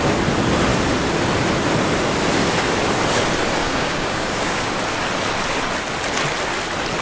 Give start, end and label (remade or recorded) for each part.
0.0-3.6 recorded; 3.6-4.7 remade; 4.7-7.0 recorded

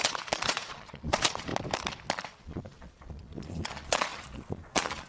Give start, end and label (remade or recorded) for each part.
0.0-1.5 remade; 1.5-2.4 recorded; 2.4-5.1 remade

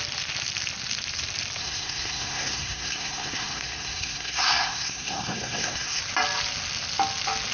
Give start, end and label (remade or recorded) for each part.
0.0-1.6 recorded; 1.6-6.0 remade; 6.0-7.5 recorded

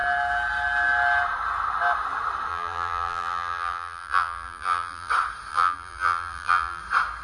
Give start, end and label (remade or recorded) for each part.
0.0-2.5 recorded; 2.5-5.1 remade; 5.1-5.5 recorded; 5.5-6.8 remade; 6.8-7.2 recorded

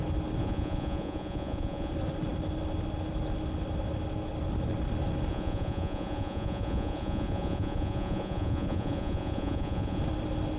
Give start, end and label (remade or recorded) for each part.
0.0-0.4 recorded; 0.4-1.9 remade; 1.9-5.3 recorded; 5.3-10.0 remade; 10.0-10.6 recorded